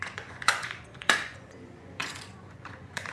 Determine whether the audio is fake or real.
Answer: fake